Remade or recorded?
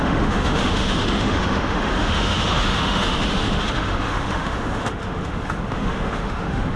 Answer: remade